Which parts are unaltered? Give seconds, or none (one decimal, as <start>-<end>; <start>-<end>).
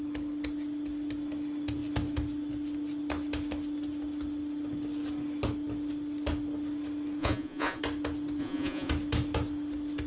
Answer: 0.0-7.2; 7.8-8.4; 8.9-10.1